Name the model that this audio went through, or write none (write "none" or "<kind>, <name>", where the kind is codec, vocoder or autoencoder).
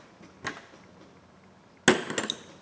none